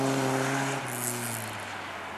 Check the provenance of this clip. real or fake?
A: real